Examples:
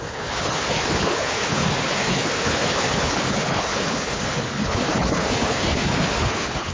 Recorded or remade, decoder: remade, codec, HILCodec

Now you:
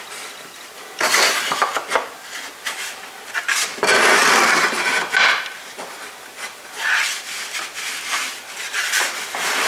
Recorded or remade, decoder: recorded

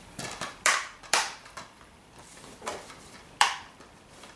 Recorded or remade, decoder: remade, vocoder, BigVGAN v2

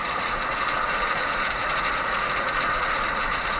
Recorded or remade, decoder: remade, vocoder, Vocos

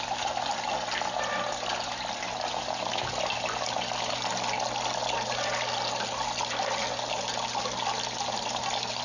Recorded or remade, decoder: recorded